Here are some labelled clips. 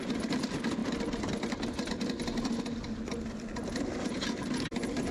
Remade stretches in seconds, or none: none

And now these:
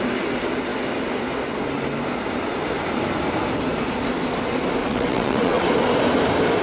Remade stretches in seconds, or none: 4.8-5.7 (vocoder, WaveNeXt)